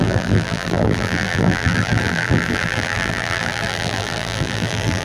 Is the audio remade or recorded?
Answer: remade